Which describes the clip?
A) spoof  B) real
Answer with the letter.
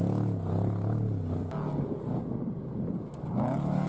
B